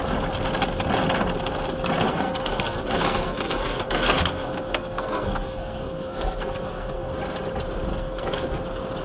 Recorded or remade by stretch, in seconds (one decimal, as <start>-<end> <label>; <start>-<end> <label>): 0.0-2.1 recorded; 2.1-7.1 remade; 7.1-7.9 recorded; 7.9-8.6 remade; 8.6-9.0 recorded